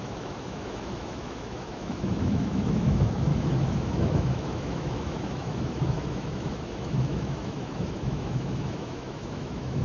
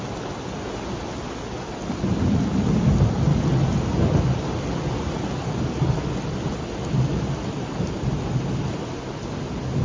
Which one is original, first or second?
second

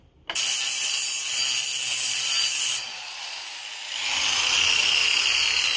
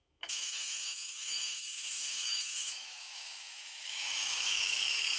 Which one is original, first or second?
first